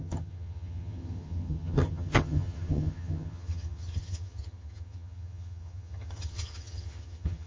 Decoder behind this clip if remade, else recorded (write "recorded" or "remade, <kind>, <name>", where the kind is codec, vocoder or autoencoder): remade, vocoder, HiFi-GAN